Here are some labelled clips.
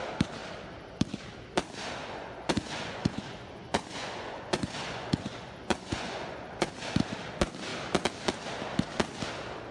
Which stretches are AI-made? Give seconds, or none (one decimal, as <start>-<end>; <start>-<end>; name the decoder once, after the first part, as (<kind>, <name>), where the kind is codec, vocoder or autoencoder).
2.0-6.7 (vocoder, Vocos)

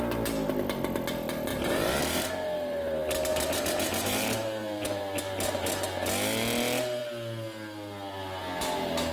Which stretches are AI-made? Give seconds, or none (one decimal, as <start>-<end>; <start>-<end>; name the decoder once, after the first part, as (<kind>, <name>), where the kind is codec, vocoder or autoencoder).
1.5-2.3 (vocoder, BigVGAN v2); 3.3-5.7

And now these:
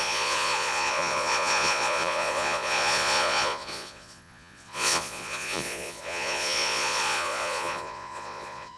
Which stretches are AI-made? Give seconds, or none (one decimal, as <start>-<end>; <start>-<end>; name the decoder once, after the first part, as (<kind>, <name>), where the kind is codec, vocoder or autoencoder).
0.0-8.8 (vocoder, Vocos)

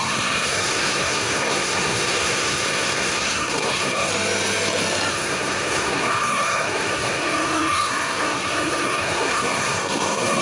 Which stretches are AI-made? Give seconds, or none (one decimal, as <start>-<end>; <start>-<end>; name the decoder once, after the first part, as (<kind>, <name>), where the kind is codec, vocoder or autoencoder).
0.0-4.1 (codec, SNAC); 5.1-10.4

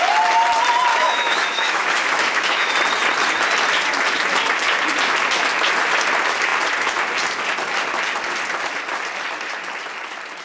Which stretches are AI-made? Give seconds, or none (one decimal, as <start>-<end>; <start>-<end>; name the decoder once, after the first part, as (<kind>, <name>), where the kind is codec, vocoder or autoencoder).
0.9-2.7 (autoencoder, DAC-VAE)

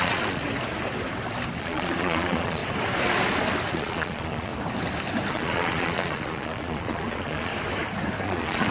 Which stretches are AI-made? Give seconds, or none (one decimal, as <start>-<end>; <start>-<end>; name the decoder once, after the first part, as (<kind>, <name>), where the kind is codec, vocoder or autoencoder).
0.0-0.4 (vocoder, Vocos); 1.6-2.6; 3.7-4.5; 5.3-7.5; 8.2-8.7

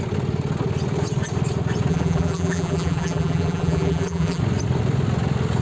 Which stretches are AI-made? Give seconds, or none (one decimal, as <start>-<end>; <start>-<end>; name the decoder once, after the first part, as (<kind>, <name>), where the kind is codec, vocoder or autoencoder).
1.9-4.4 (vocoder, BigVGAN v2)

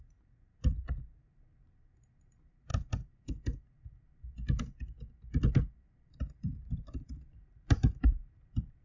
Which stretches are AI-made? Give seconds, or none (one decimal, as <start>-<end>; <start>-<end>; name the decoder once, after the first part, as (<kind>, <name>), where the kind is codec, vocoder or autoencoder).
0.0-2.7 (vocoder, BigVGAN v2); 6.2-8.8